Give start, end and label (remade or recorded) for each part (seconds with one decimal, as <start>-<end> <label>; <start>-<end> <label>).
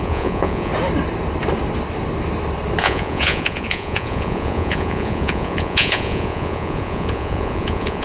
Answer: 0.0-0.7 remade; 0.7-2.8 recorded; 2.8-8.0 remade